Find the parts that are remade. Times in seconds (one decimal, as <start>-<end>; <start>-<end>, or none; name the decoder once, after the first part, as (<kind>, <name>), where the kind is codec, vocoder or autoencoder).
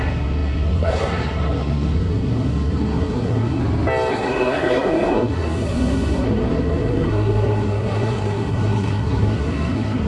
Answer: 0.0-3.6 (codec, SNAC); 4.1-10.1